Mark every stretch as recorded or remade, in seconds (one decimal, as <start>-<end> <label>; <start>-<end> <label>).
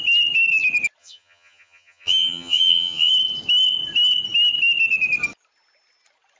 0.0-1.0 recorded; 1.0-3.1 remade; 3.1-6.4 recorded